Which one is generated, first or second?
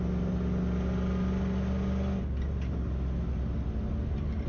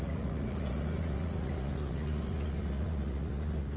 second